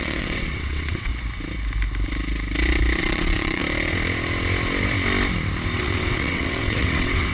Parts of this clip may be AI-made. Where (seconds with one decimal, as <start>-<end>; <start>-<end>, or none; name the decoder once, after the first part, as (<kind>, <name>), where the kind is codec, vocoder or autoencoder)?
0.0-1.1 (vocoder, WaveNeXt); 3.0-3.6; 5.8-7.3